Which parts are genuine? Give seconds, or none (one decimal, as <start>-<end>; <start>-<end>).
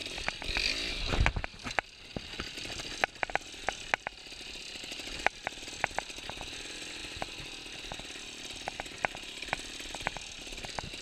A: 0.0-11.0